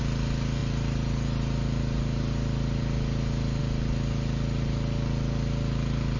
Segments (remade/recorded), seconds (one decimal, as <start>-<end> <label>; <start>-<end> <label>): 0.0-6.2 recorded